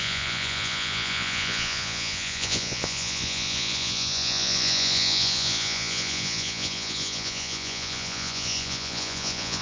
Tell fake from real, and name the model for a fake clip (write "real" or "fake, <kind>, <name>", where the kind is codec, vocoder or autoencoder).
fake, vocoder, Vocos